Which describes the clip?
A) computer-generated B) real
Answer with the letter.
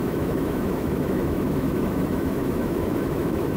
A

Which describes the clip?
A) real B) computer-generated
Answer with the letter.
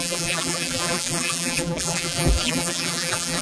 B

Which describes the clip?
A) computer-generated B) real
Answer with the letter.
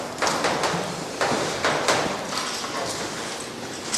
B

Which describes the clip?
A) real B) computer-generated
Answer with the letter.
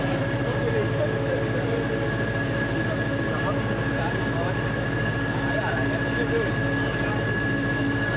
A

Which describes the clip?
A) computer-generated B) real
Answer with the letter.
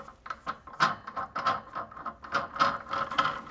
B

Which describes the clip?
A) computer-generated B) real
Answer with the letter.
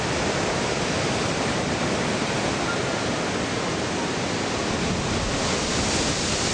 A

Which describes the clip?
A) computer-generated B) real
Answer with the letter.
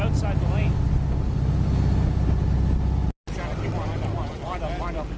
B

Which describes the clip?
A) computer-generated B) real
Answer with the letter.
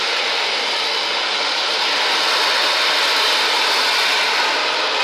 B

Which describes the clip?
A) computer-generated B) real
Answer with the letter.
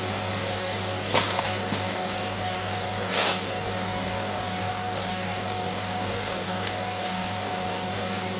A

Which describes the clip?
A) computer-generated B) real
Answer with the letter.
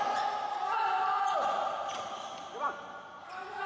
B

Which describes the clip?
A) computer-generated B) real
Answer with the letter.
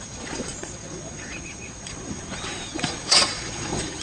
A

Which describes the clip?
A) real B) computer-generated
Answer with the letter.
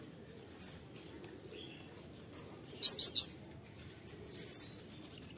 A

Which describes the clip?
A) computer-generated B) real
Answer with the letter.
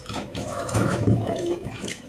A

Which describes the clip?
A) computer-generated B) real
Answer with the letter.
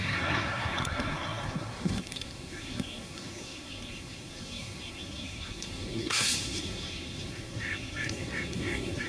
A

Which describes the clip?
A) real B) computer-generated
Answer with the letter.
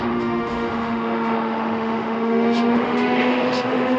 B